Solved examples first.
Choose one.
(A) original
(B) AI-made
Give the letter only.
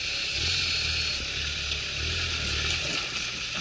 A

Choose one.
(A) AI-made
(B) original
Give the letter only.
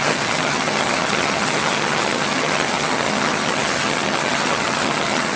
A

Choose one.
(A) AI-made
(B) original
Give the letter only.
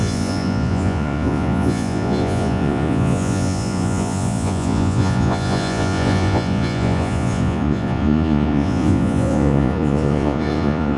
A